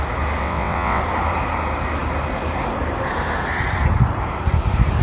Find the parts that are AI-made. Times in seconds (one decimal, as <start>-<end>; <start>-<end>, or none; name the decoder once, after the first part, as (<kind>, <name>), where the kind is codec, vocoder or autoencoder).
0.4-1.0 (vocoder, WaveNeXt)

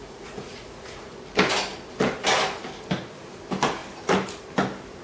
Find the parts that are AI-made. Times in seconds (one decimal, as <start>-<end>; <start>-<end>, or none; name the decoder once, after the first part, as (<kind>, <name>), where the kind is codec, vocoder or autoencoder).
0.0-1.2 (vocoder, Vocos)

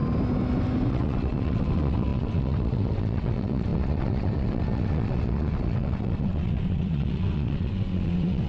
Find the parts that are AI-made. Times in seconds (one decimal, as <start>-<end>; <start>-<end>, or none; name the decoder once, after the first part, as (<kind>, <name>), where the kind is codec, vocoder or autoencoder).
0.9-8.5 (vocoder, WaveNeXt)

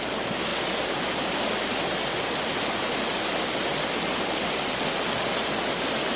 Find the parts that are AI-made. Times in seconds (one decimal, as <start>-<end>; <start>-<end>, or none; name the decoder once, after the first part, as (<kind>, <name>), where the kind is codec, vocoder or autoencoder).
none